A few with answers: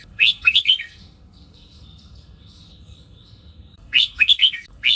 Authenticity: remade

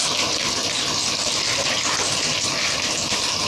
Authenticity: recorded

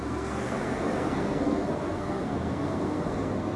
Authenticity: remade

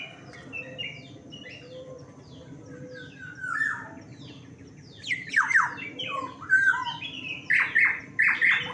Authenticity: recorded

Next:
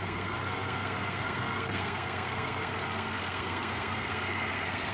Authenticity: remade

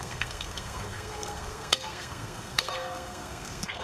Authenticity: remade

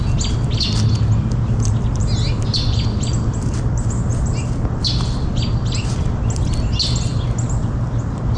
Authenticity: recorded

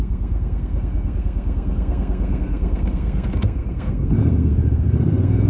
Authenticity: remade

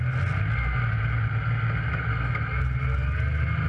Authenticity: recorded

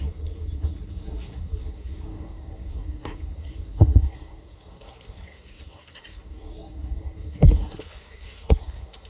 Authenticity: remade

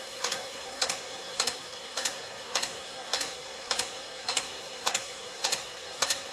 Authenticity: remade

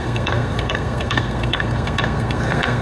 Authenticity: remade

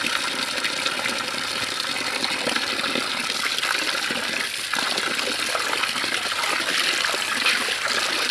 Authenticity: recorded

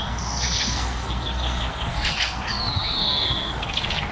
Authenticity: remade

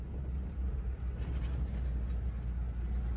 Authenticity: recorded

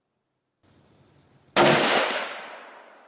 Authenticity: recorded